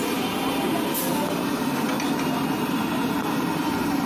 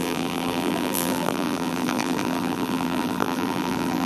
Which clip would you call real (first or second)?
first